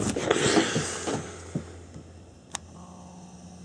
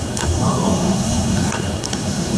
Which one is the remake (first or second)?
second